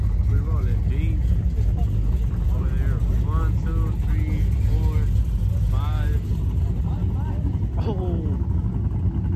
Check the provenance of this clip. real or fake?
real